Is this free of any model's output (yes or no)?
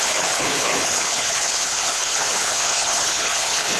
no